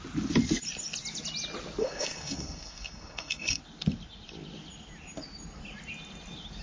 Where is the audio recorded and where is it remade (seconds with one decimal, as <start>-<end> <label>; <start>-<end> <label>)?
0.0-1.8 recorded; 1.8-3.6 remade; 3.6-6.6 recorded